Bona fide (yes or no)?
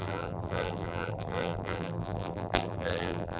no